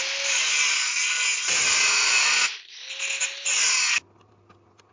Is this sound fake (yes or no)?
no